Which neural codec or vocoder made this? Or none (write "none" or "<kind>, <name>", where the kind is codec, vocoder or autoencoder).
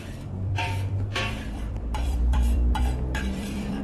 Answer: vocoder, BigVGAN v2